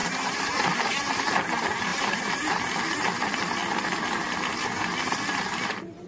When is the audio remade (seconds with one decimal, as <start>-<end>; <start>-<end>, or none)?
0.0-1.2; 1.9-2.5